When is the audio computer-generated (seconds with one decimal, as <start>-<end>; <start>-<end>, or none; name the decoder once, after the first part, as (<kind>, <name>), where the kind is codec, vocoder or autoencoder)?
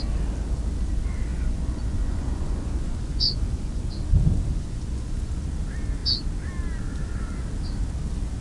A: 1.3-3.8 (vocoder, Vocos); 4.5-5.4